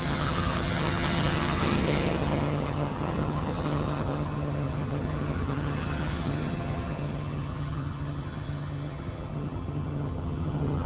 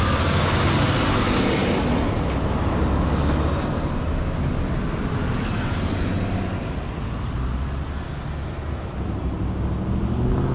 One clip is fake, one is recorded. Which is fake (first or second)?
first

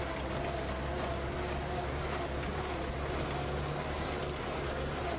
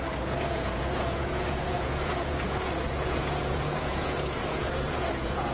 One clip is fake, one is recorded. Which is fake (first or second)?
second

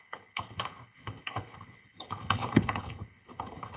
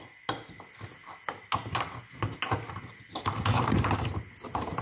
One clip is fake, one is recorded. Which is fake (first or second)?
first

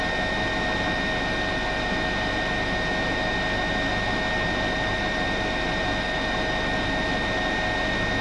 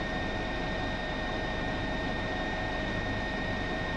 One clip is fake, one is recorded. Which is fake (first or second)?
second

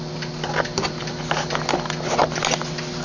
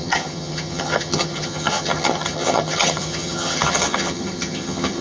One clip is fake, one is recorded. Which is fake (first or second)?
second